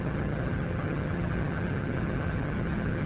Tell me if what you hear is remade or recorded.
remade